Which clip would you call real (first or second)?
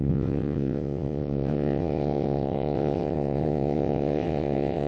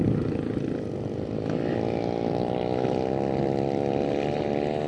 second